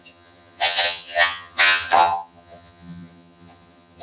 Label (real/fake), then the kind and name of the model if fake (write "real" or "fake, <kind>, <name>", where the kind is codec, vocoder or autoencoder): fake, vocoder, HiFi-GAN